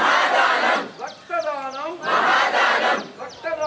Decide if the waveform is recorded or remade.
recorded